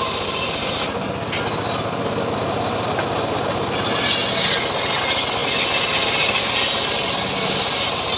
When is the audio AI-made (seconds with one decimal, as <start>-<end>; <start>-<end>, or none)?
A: none